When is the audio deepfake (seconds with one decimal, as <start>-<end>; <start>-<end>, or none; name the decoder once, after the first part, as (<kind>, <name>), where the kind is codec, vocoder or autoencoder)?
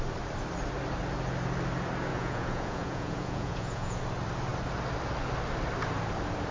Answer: 2.1-4.0 (vocoder, Vocos)